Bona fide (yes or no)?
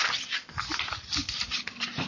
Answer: yes